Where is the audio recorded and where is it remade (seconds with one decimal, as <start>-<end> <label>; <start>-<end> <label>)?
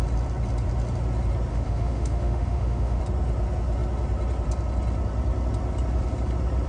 0.0-1.5 recorded; 1.5-3.0 remade; 3.0-6.7 recorded